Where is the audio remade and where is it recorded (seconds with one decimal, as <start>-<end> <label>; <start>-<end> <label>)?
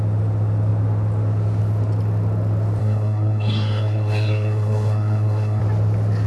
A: 0.0-2.8 recorded; 2.8-5.6 remade; 5.6-6.3 recorded